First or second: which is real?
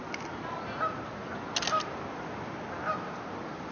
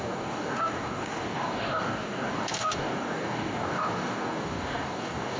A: first